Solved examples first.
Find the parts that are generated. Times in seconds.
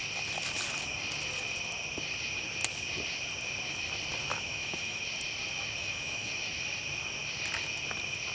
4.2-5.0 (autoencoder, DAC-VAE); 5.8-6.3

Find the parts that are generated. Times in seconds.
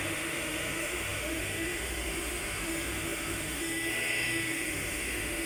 0.0-5.5 (autoencoder, DAC-VAE)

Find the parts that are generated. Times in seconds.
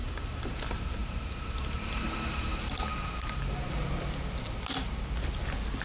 0.0-0.6 (vocoder, BigVGAN v2); 1.0-3.9